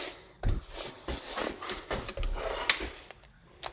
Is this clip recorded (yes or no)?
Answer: yes